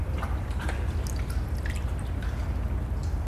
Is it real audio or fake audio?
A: fake